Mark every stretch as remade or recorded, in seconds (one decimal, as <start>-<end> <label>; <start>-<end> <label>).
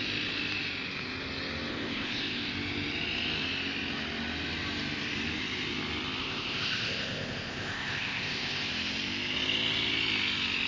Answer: 0.0-1.7 recorded; 1.7-2.5 remade; 2.5-6.2 recorded; 6.2-8.7 remade; 8.7-10.7 recorded